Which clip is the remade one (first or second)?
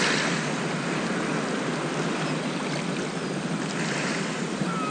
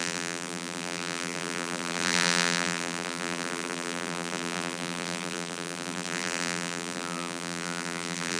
second